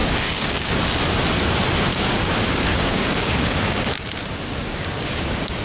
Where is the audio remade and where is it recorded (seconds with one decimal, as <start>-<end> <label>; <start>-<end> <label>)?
0.0-0.8 remade; 0.8-1.9 recorded; 1.9-4.1 remade; 4.1-4.7 recorded; 4.7-5.6 remade